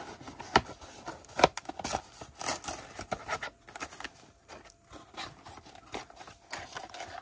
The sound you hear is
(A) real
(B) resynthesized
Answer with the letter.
A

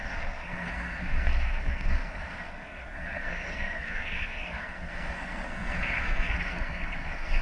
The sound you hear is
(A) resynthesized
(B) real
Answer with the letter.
A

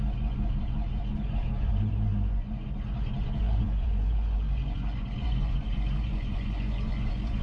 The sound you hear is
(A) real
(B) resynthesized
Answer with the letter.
B